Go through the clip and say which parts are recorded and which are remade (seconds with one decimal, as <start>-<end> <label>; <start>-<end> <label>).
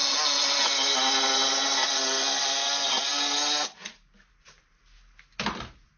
0.0-6.0 recorded